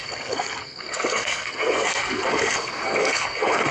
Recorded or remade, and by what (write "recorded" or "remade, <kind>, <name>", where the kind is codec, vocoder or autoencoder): remade, codec, SNAC